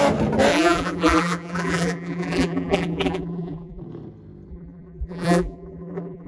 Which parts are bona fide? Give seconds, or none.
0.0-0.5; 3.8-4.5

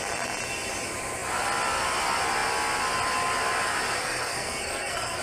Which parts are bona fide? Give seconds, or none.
0.0-4.0

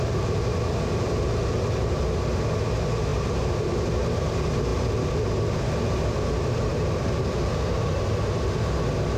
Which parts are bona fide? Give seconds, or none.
0.0-3.1; 3.7-6.7; 7.3-9.2

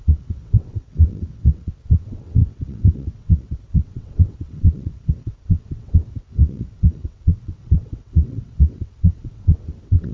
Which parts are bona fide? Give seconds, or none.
none

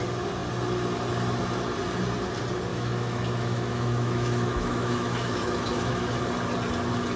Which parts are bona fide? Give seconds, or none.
0.0-2.7; 6.2-7.2

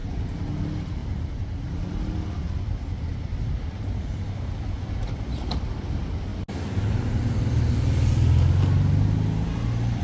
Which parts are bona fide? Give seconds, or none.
0.0-10.0

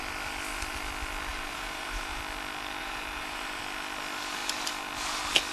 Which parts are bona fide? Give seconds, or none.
0.0-1.3; 2.2-2.8; 3.6-5.5

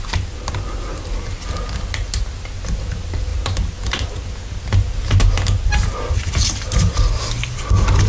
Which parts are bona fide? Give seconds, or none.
0.0-8.1